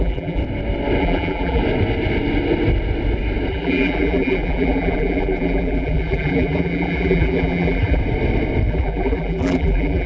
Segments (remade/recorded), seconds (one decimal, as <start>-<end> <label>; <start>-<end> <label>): 0.0-0.4 remade; 0.4-1.0 recorded; 1.0-1.6 remade; 1.6-3.5 recorded; 3.5-8.0 remade; 8.0-8.7 recorded; 8.7-10.1 remade